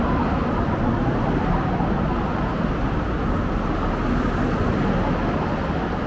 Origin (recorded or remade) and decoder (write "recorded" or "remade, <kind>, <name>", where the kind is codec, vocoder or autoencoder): recorded